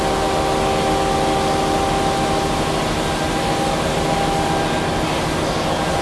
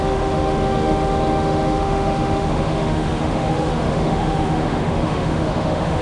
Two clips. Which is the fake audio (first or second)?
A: second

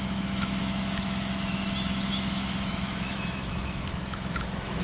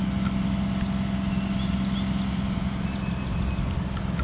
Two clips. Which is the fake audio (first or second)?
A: first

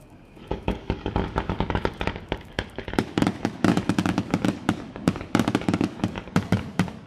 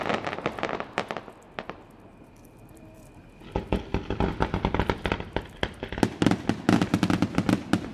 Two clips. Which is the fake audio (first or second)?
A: first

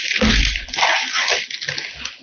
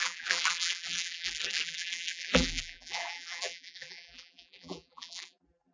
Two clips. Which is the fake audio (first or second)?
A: second